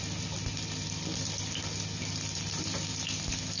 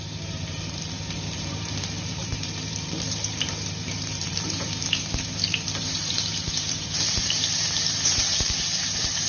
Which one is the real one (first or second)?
first